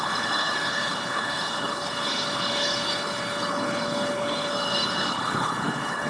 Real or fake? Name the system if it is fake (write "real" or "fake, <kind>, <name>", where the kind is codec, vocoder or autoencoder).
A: fake, codec, HILCodec